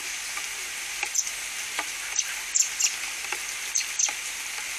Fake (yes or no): no